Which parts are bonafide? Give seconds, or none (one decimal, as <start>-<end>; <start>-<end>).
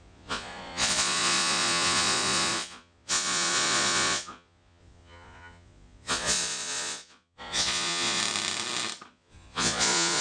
8.2-9.1